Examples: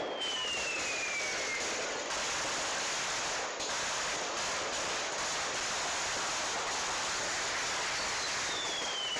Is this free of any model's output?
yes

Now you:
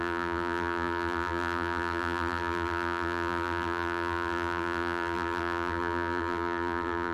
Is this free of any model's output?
no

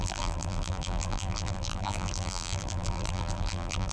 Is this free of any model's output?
no